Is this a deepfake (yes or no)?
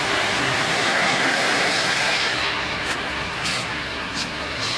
yes